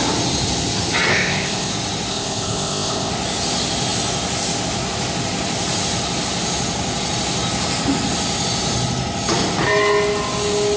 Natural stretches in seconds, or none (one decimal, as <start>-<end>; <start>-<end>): 0.0-1.1; 1.7-2.1; 3.1-10.8